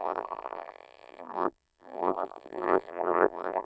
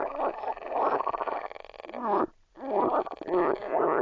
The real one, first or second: second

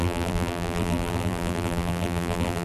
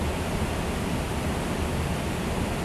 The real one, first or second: second